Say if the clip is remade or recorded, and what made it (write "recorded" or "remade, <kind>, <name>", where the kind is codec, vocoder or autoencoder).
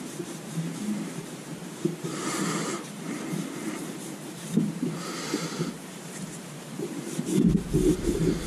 remade, vocoder, BigVGAN v2